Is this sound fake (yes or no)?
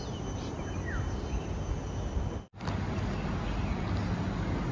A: no